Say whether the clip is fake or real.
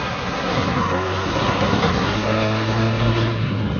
fake